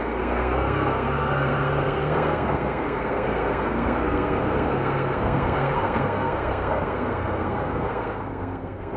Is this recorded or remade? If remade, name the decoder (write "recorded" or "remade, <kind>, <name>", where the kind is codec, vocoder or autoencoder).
remade, codec, SNAC